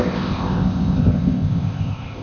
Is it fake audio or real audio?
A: fake